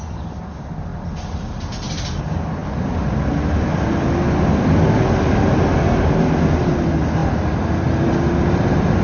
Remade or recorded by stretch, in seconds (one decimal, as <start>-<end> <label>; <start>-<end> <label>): 0.0-2.6 recorded; 2.6-3.3 remade; 3.3-7.2 recorded; 7.2-8.1 remade; 8.1-9.0 recorded